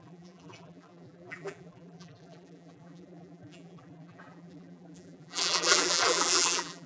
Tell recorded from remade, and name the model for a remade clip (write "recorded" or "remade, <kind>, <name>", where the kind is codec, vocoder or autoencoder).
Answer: remade, vocoder, BigVGAN v2